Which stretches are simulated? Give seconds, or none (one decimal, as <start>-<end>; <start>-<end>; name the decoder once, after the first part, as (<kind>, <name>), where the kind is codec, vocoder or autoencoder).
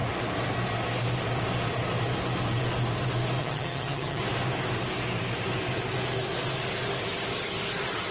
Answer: 3.4-4.2 (vocoder, HiFi-GAN)